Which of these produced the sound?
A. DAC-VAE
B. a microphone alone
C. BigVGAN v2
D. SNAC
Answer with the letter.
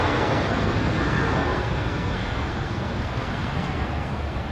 D